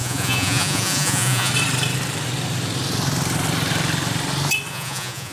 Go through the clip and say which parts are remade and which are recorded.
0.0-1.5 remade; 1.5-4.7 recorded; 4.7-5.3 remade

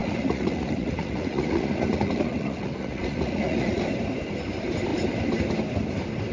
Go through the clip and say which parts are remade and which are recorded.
0.0-3.8 remade; 3.8-6.3 recorded

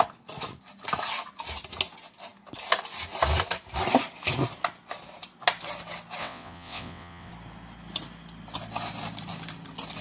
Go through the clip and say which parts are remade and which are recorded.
0.0-6.2 recorded; 6.2-7.3 remade; 7.3-10.0 recorded

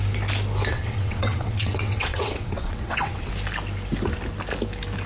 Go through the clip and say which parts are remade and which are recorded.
0.0-0.7 recorded; 0.7-3.3 remade; 3.3-5.1 recorded

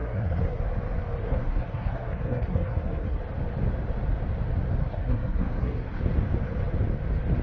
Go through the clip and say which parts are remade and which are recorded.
0.0-0.6 remade; 0.6-1.2 recorded; 1.2-3.2 remade; 3.2-4.8 recorded; 4.8-6.0 remade; 6.0-7.4 recorded